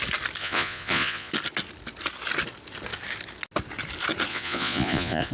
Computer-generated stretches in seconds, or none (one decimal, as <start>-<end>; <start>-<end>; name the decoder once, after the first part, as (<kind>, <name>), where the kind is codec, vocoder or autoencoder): 0.4-1.3 (vocoder, Vocos); 4.3-5.3